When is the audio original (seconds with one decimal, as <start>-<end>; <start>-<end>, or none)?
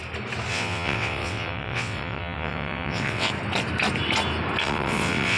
0.0-0.5; 3.3-4.6